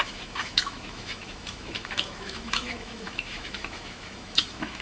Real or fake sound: fake